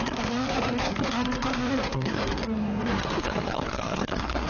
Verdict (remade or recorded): remade